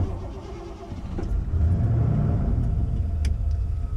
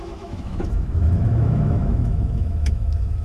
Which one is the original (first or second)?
first